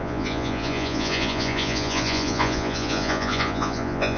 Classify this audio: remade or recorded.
remade